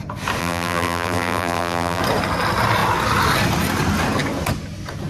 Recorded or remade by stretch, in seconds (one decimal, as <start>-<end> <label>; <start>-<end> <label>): 0.0-0.4 recorded; 0.4-2.0 remade; 2.0-5.1 recorded